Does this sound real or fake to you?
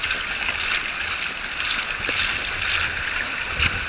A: real